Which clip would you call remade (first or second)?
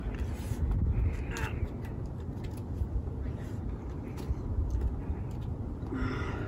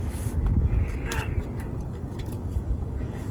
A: second